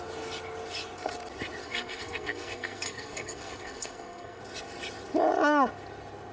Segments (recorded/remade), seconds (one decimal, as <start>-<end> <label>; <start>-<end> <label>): 0.0-1.6 recorded; 1.6-4.4 remade; 4.4-6.3 recorded